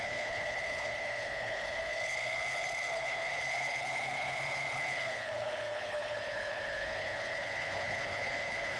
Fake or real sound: fake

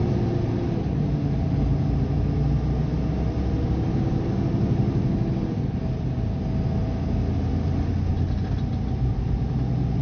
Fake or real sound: real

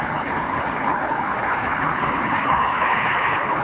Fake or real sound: fake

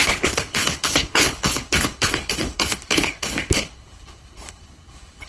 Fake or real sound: fake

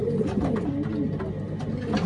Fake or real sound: real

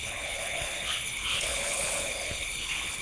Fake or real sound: fake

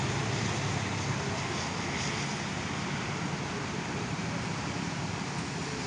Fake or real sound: real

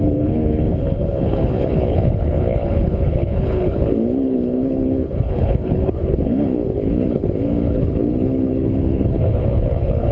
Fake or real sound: fake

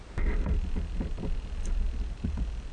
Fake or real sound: real